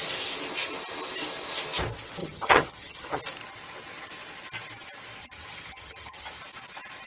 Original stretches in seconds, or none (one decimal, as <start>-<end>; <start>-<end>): 0.0-2.2; 3.2-5.2; 6.4-7.1